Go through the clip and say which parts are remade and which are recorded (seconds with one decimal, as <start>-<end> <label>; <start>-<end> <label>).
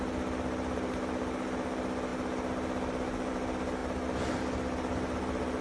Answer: 0.0-5.6 recorded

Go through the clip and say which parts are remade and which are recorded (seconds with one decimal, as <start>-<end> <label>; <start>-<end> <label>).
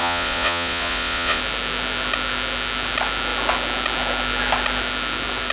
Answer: 0.0-1.4 remade; 1.4-5.5 recorded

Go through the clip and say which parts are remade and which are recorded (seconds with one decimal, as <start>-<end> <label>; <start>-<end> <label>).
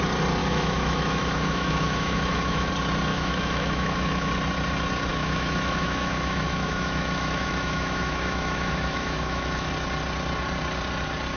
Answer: 0.0-0.4 recorded; 0.4-2.7 remade; 2.7-3.1 recorded; 3.1-4.3 remade; 4.3-5.1 recorded; 5.1-9.7 remade; 9.7-11.4 recorded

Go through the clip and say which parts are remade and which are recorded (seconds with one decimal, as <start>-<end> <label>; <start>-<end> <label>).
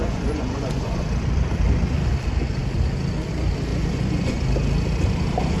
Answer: 0.0-1.1 remade; 1.1-3.7 recorded; 3.7-4.4 remade; 4.4-5.6 recorded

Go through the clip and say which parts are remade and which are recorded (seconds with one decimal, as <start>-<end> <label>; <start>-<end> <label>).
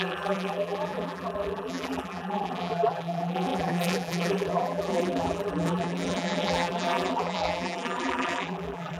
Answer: 0.0-9.0 remade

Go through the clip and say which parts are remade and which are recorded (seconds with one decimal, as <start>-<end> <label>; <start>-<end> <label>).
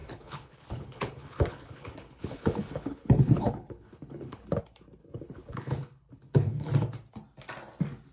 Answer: 0.0-4.6 remade; 4.6-5.0 recorded; 5.0-6.7 remade; 6.7-8.1 recorded